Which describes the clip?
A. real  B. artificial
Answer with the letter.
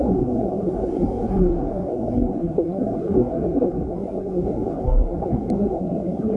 B